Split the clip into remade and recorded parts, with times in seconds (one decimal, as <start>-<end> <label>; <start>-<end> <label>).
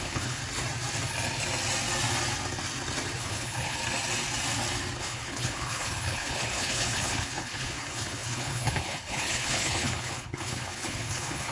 0.0-0.4 remade; 0.4-3.2 recorded; 3.2-3.8 remade; 3.8-5.0 recorded; 5.0-11.5 remade